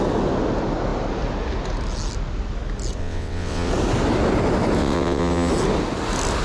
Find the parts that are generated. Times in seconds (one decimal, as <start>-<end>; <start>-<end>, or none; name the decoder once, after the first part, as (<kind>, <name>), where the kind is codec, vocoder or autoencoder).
3.0-3.7 (vocoder, WaveNeXt); 4.8-5.5